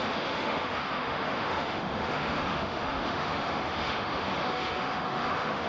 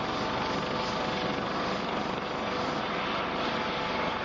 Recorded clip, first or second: second